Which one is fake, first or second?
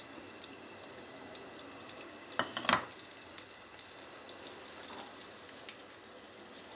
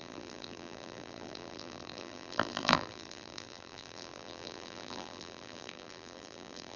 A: second